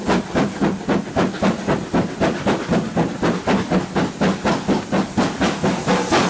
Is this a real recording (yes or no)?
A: yes